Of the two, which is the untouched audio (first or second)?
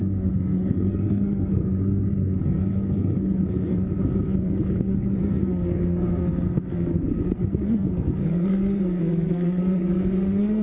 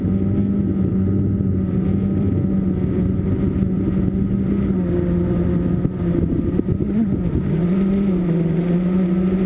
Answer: second